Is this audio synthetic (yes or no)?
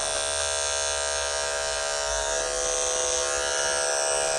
no